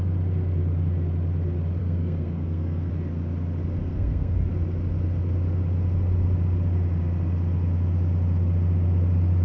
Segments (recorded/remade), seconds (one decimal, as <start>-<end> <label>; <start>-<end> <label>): 0.0-1.8 recorded; 1.8-2.9 remade; 2.9-3.8 recorded; 3.8-4.5 remade; 4.5-9.4 recorded